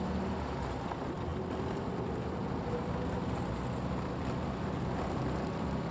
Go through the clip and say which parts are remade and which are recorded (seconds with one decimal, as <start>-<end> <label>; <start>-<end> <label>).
0.0-5.9 recorded